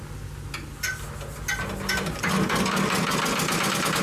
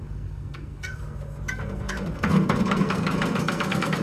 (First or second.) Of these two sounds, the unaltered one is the first